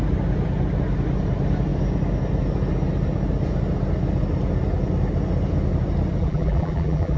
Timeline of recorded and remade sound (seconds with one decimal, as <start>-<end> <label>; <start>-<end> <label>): 0.0-6.2 recorded; 6.2-7.2 remade

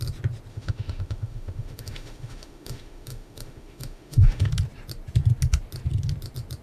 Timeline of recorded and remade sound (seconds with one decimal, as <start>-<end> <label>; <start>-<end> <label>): 0.0-0.5 recorded; 0.5-4.5 remade; 4.5-6.6 recorded

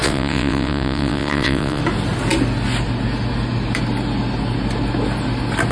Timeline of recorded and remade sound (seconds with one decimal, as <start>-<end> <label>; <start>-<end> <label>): 0.0-1.8 remade; 1.8-5.7 recorded

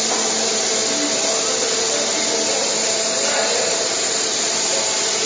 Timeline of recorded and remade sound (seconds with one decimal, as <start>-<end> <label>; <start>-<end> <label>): 0.0-0.7 remade; 0.7-2.5 recorded; 2.5-5.3 remade

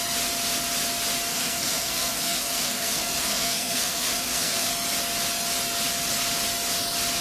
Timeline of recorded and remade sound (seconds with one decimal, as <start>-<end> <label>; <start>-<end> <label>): 0.0-1.3 recorded; 1.3-4.7 remade; 4.7-7.2 recorded

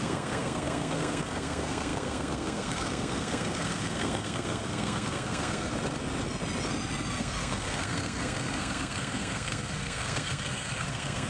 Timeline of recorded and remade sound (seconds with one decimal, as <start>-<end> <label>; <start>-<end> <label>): 0.0-5.7 remade; 5.7-7.2 recorded; 7.2-11.3 remade

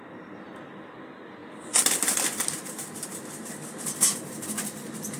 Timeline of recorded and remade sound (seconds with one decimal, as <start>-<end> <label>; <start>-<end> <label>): 0.0-5.2 recorded